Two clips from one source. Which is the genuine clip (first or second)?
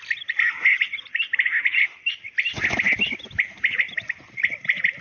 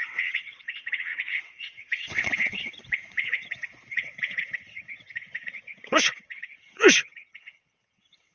first